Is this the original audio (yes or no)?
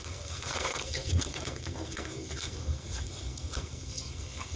no